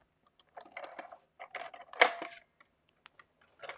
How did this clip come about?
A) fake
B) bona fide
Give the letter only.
B